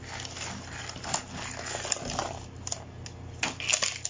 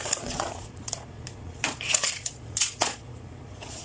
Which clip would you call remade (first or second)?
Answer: second